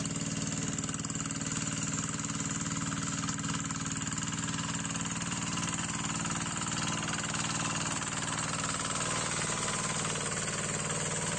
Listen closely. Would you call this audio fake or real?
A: real